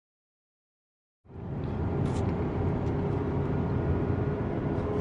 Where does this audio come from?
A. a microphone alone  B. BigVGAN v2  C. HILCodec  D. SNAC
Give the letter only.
A